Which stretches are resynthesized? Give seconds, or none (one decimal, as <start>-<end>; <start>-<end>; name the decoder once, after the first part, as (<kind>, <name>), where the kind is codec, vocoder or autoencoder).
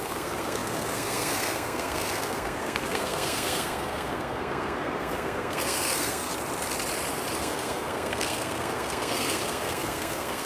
0.0-6.3 (codec, SNAC); 7.4-10.5